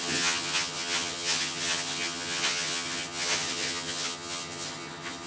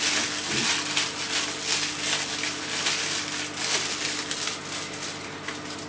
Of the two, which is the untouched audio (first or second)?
second